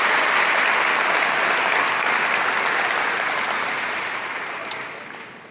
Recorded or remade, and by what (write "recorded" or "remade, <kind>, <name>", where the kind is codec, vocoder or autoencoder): recorded